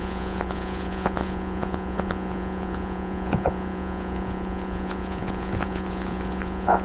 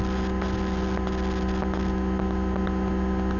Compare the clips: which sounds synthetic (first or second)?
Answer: first